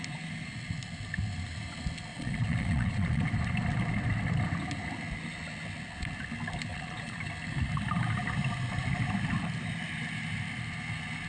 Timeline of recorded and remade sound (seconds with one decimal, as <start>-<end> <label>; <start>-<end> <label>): 0.0-2.1 recorded; 2.1-3.2 remade; 3.2-6.7 recorded; 6.7-7.2 remade; 7.2-11.3 recorded